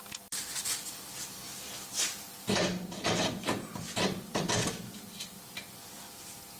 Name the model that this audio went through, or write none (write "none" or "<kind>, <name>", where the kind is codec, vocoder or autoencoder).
vocoder, BigVGAN v2